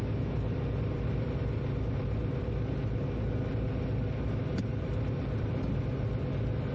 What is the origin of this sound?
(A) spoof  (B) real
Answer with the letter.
B